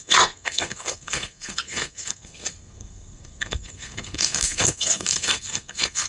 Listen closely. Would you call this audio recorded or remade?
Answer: remade